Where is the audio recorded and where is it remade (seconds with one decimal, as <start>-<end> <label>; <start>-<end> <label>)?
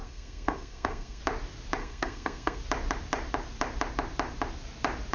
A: 0.0-1.2 remade; 1.2-1.8 recorded; 1.8-2.6 remade; 2.6-5.1 recorded